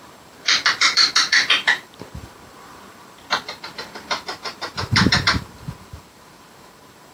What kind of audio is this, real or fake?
fake